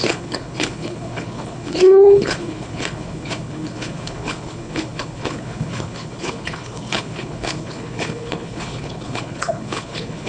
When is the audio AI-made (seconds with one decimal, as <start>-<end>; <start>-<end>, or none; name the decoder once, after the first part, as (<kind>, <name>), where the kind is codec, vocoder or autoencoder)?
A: 0.0-10.3 (codec, HILCodec)